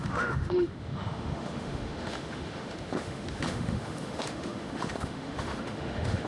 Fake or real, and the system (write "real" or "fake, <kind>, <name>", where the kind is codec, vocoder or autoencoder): fake, autoencoder, DAC-VAE